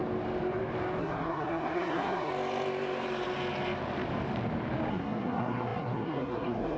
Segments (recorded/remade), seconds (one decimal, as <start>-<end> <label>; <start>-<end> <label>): 0.0-1.0 recorded; 1.0-2.3 remade; 2.3-4.9 recorded; 4.9-6.8 remade

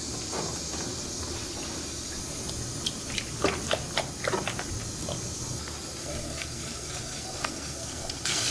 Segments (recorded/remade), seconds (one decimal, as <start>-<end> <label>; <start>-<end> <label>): 0.0-6.0 recorded; 6.0-8.5 remade